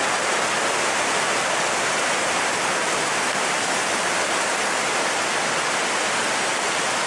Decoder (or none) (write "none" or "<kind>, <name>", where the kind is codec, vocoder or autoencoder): none